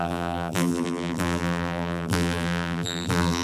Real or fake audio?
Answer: fake